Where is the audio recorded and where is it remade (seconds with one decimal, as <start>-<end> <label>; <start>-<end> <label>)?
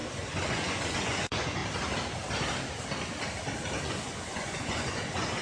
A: 0.0-1.6 remade; 1.6-3.8 recorded; 3.8-5.4 remade